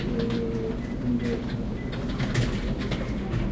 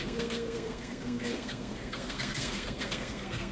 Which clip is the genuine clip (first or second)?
first